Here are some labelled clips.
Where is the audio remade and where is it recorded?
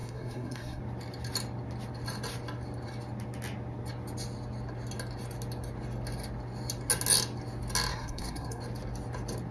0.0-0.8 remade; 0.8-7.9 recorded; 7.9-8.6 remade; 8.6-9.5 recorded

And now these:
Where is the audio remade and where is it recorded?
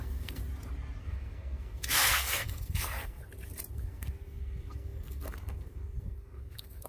0.0-0.4 remade; 0.4-1.0 recorded; 1.0-3.2 remade; 3.2-3.7 recorded; 3.7-6.9 remade